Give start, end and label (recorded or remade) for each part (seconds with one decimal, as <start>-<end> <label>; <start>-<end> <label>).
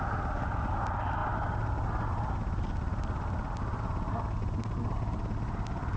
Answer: 0.0-6.0 recorded